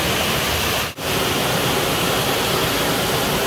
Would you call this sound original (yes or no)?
yes